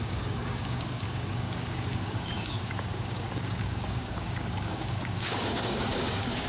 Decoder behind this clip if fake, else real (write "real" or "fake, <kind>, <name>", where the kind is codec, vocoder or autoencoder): fake, codec, DAC